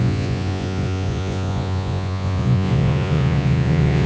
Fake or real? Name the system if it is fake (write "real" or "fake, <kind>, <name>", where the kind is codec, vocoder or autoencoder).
fake, vocoder, Vocos